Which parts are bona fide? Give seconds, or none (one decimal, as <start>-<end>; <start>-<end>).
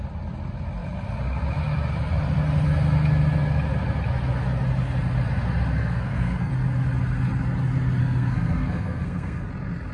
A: 0.0-5.8; 6.5-8.0; 9.5-9.9